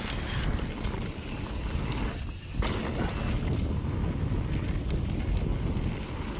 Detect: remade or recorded recorded